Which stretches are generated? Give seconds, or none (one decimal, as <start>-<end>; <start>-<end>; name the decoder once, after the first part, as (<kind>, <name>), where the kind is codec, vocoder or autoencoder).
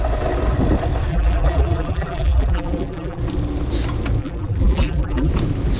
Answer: 1.1-3.2 (vocoder, BigVGAN v2); 4.2-5.3